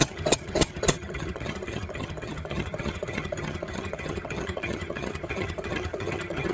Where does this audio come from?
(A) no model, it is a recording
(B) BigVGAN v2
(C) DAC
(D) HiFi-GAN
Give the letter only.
D